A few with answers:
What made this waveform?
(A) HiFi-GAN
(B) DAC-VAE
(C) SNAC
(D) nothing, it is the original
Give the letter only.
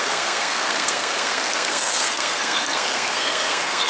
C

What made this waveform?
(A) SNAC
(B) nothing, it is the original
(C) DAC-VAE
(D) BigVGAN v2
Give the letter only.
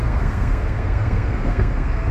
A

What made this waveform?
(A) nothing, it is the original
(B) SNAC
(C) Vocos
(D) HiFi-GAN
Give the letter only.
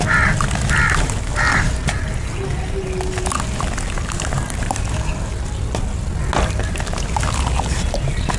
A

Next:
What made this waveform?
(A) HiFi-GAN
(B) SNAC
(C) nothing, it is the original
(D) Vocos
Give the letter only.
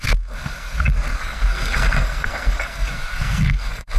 B